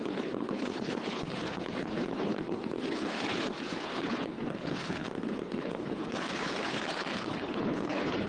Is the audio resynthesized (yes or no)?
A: yes